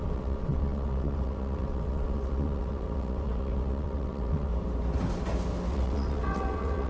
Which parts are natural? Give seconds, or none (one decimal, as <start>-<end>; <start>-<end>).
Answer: 4.5-5.7

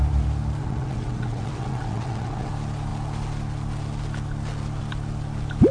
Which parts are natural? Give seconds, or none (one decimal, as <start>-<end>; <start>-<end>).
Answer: 0.0-0.6; 2.5-5.7

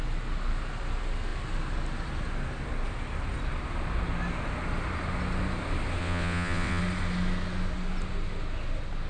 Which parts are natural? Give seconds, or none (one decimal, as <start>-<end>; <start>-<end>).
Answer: 0.0-6.0; 6.8-9.1